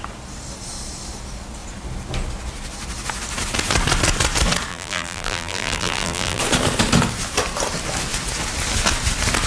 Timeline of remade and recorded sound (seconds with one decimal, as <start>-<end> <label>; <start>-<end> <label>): 0.0-4.7 recorded; 4.7-6.4 remade; 6.4-9.5 recorded